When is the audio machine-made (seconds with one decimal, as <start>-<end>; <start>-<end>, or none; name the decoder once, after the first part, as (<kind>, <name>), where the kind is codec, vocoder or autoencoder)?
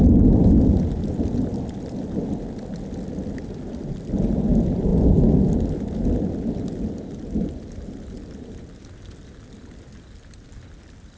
none